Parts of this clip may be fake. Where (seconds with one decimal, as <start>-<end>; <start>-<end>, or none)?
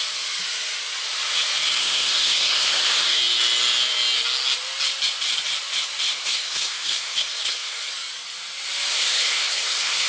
1.8-3.2; 6.1-7.9; 8.9-10.1